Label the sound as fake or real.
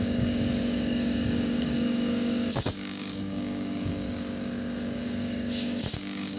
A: fake